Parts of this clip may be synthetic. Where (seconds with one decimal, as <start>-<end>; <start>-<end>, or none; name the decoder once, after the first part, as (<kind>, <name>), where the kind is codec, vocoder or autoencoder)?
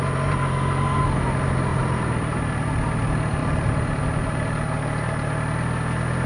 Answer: 3.4-4.0 (vocoder, BigVGAN v2)